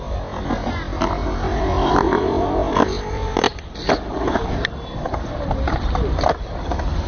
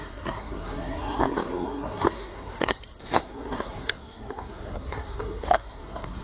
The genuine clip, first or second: first